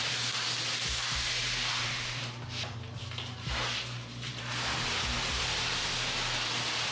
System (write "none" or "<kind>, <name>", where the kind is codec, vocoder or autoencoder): none